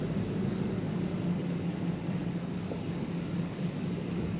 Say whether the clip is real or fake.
fake